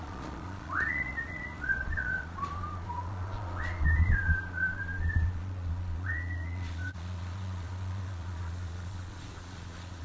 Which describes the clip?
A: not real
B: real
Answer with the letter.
A